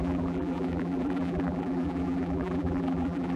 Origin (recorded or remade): remade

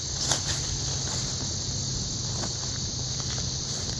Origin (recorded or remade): recorded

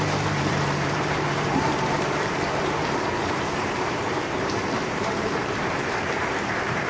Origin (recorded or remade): remade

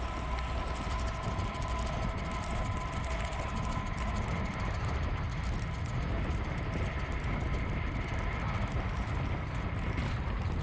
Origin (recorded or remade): recorded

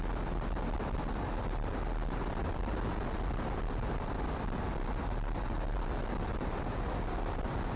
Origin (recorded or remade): recorded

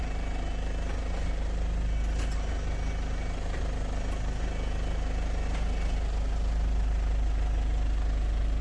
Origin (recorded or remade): recorded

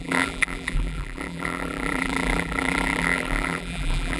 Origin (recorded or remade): remade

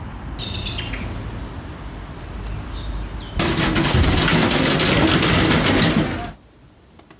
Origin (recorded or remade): recorded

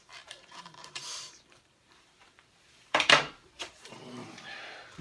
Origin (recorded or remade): remade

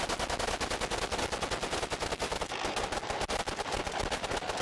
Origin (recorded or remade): recorded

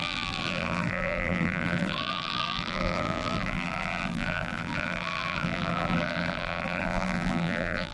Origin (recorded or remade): remade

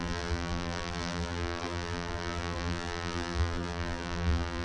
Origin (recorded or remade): remade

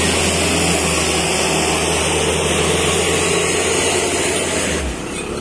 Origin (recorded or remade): recorded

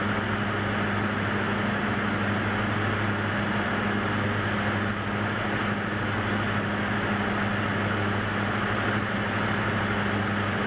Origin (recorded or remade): recorded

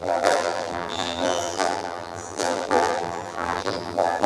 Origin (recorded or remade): remade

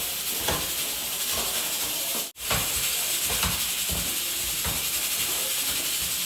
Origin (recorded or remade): recorded